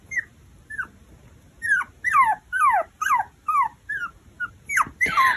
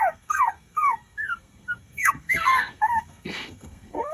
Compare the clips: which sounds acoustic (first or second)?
first